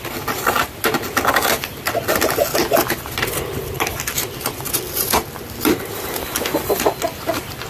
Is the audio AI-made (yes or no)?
yes